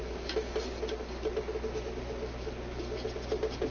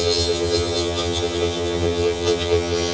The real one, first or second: first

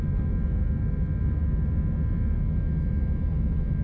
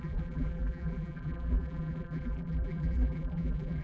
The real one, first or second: first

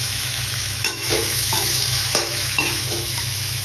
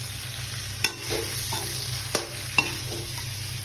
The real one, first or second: second